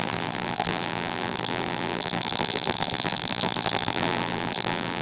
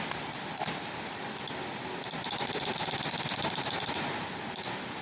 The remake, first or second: first